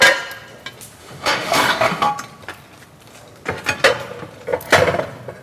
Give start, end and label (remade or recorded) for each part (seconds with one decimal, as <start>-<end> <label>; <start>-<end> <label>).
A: 0.0-1.0 recorded; 1.0-2.1 remade; 2.1-5.4 recorded